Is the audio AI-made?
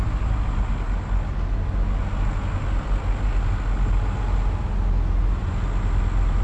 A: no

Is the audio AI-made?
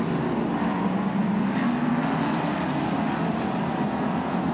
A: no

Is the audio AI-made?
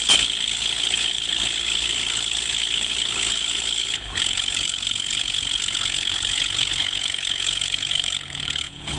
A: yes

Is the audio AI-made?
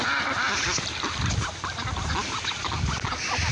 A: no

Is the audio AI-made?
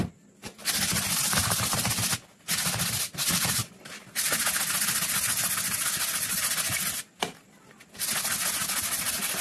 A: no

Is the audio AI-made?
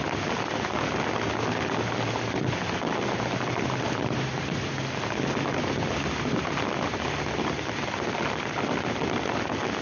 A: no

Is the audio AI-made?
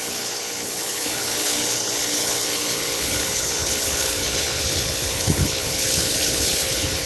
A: yes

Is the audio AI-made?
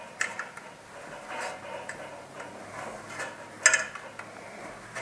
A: no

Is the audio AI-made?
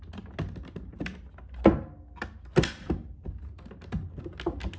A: no